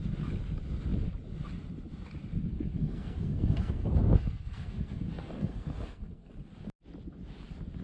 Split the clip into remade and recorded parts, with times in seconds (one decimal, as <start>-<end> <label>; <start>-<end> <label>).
0.0-2.5 recorded; 2.5-6.3 remade; 6.3-7.8 recorded